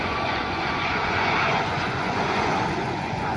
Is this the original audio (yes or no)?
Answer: no